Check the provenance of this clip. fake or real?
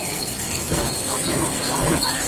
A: fake